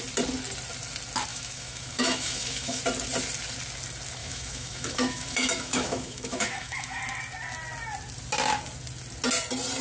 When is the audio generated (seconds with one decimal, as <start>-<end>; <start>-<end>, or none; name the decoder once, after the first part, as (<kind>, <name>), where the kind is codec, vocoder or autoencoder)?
1.3-2.8 (autoencoder, DAC-VAE); 4.2-7.0